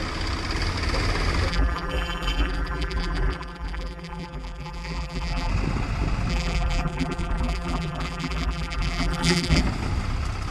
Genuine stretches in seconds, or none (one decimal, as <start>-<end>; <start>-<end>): 0.0-1.5; 5.5-6.3; 9.6-10.5